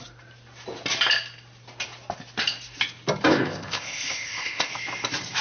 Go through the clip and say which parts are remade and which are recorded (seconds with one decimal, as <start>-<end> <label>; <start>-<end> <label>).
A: 0.0-3.3 recorded; 3.3-4.7 remade; 4.7-5.4 recorded